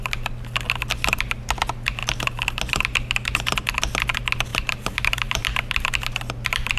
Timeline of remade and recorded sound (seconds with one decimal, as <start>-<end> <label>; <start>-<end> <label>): 0.0-4.5 recorded; 4.5-5.4 remade; 5.4-6.8 recorded